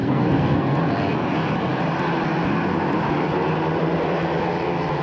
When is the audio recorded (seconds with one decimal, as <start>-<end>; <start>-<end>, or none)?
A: 0.8-5.0